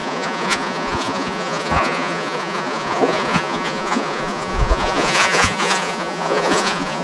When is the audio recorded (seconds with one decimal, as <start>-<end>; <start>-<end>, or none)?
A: none